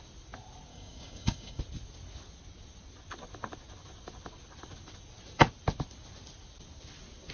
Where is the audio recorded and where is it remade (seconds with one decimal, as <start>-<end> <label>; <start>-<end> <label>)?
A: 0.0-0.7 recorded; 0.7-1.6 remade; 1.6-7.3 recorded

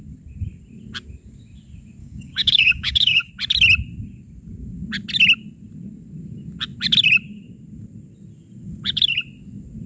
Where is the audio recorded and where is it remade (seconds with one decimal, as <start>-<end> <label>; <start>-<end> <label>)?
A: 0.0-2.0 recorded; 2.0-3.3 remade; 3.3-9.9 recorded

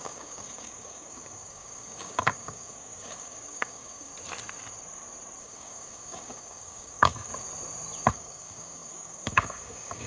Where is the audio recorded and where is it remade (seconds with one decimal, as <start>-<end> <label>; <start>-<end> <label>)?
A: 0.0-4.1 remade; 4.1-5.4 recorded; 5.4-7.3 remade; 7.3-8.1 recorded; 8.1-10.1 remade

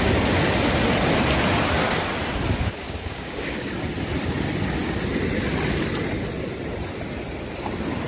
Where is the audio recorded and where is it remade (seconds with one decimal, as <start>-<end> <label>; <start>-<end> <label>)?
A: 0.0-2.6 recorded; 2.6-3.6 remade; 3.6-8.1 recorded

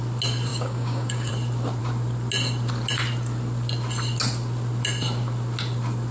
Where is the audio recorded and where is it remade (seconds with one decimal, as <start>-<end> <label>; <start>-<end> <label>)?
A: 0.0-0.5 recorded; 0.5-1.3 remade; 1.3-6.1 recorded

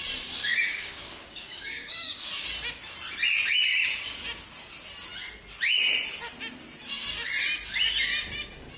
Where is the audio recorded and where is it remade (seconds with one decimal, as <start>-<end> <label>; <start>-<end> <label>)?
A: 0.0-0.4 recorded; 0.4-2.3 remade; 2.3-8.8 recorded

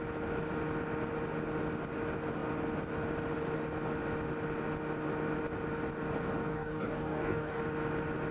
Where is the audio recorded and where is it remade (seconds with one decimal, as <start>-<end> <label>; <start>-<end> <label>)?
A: 0.0-6.5 recorded; 6.5-7.6 remade; 7.6-8.3 recorded

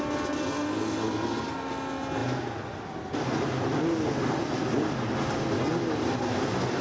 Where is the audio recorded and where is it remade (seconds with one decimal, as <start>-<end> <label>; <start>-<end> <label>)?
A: 0.0-6.8 recorded